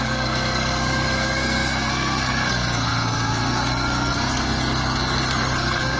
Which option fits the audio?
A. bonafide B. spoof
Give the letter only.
B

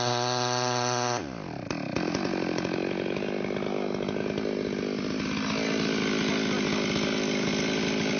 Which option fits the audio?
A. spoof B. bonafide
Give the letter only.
B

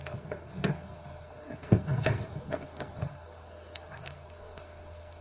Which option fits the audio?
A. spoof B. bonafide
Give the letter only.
A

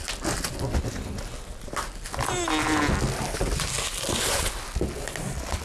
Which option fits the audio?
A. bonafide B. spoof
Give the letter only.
A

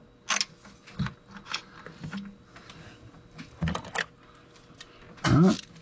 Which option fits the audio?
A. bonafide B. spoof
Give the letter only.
A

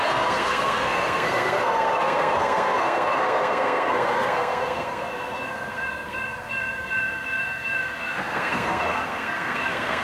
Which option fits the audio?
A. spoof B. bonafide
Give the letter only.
A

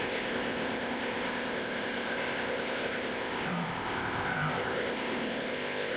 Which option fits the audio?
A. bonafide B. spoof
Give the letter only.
B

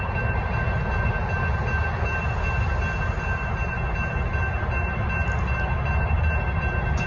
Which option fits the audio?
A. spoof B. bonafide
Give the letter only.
B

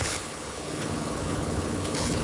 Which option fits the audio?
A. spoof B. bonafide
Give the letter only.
A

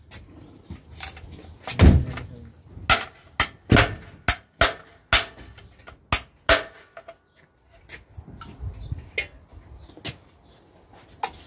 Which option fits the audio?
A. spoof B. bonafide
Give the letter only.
B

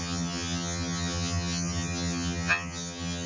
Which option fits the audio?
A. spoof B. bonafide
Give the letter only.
A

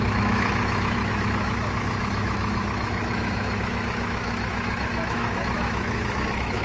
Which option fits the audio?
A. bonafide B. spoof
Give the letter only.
B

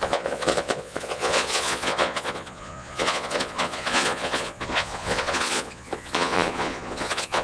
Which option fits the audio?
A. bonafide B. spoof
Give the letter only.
B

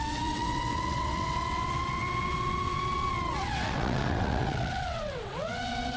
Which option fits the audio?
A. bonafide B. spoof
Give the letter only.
B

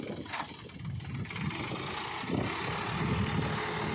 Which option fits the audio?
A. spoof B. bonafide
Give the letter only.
B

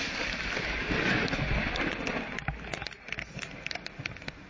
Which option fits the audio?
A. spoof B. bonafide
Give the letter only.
B